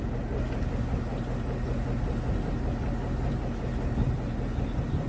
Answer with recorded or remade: recorded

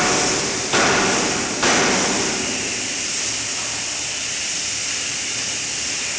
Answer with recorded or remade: recorded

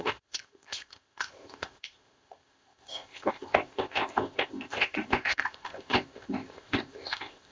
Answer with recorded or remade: remade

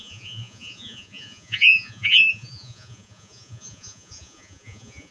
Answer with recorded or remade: remade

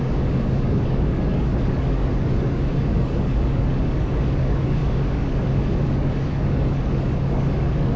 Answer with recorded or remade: remade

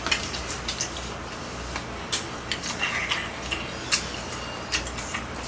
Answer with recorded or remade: recorded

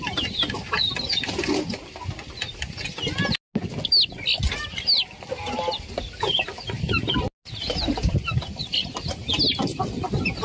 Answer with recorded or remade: recorded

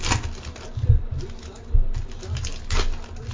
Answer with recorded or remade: recorded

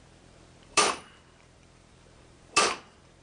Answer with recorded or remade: remade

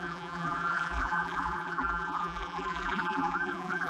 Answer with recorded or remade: remade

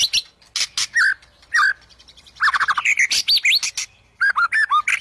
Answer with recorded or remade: recorded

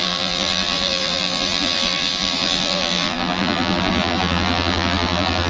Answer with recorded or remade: remade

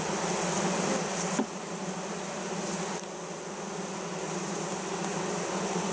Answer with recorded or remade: recorded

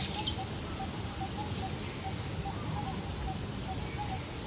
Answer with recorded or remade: recorded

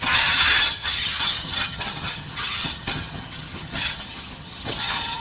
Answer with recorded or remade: remade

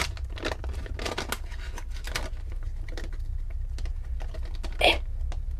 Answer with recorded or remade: recorded